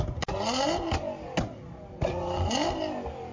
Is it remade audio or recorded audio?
recorded